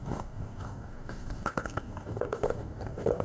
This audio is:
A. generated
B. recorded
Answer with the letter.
A